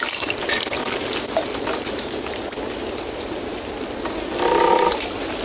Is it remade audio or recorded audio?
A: recorded